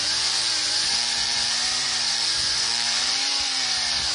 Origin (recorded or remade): remade